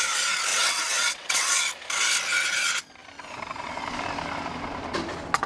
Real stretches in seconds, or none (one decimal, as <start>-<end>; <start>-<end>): 0.0-0.5; 1.6-5.5